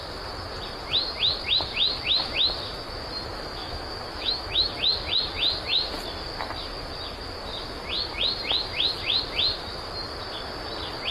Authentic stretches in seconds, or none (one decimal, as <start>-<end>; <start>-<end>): 0.0-3.6; 4.7-11.1